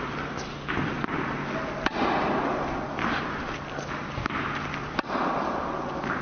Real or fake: real